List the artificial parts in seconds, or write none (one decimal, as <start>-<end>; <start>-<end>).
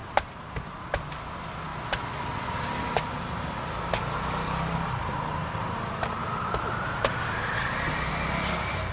none